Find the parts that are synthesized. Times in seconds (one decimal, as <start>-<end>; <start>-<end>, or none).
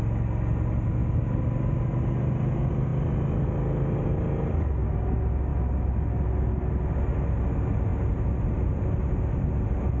none